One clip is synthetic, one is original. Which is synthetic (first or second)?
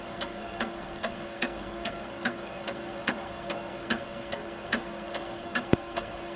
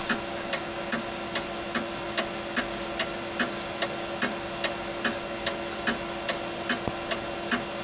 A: first